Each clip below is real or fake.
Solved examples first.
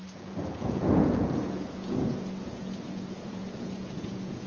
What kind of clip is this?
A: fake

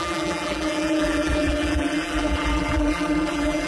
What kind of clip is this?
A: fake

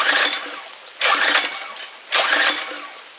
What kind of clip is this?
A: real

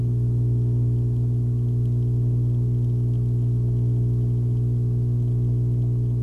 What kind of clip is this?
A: real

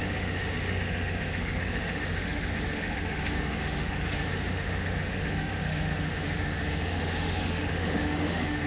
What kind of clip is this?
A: fake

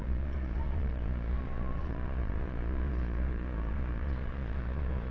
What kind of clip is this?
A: fake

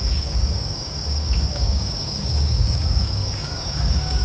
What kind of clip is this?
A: fake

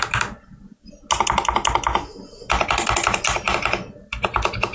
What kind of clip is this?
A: real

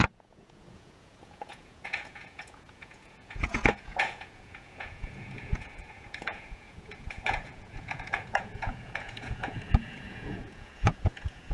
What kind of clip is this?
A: fake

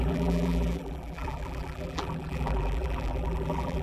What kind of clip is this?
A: fake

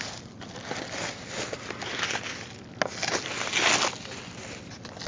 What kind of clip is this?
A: real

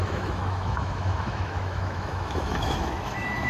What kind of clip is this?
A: fake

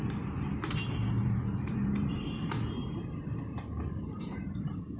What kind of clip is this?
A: fake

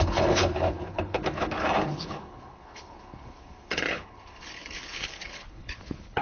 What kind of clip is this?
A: fake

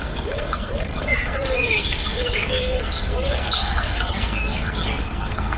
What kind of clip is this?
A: fake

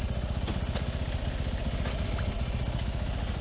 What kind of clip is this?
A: real